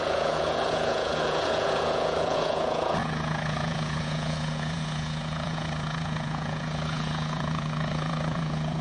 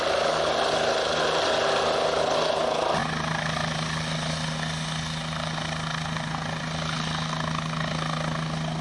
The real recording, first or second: second